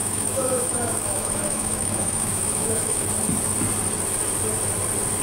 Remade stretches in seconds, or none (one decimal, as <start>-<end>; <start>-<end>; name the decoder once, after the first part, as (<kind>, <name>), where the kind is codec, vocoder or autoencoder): 0.0-3.1 (autoencoder, DAC-VAE)